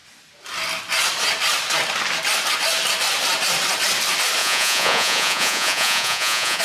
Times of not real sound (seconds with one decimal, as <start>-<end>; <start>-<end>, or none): 4.4-6.6

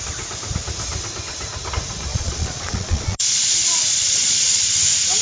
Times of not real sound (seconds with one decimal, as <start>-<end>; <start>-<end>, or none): 2.1-4.7

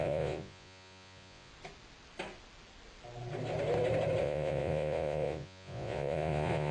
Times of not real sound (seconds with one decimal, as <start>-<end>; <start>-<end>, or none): 0.0-1.5; 4.2-6.7

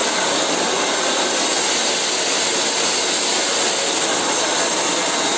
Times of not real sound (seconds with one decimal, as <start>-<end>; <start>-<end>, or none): none

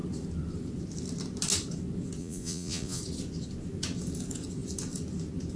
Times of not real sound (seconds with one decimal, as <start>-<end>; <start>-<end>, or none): 2.2-3.0

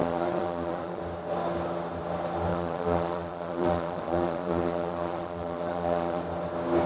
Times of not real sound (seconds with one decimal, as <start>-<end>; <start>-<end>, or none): 0.0-1.0; 2.5-6.2